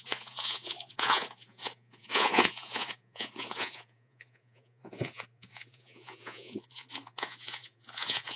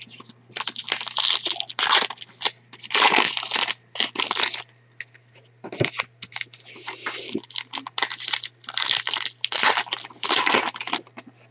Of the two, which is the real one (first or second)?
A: second